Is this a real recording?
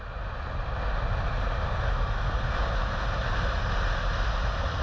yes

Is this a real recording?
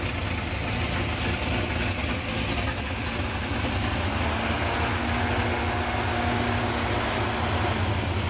yes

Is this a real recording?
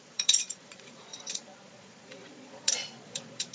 no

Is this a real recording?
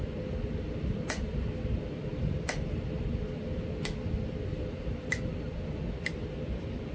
yes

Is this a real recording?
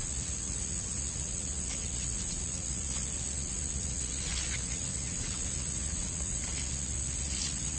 no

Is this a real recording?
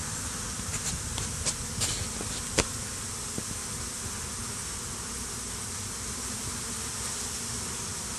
yes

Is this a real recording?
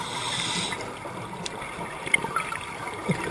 yes